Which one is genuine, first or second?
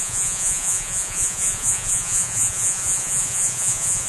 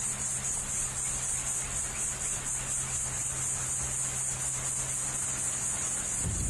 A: second